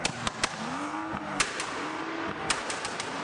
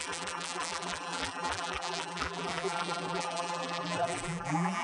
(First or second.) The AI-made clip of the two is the second